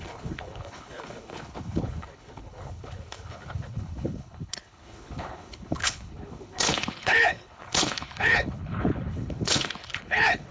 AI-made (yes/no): yes